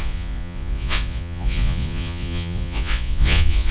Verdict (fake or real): fake